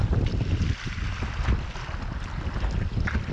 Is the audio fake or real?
real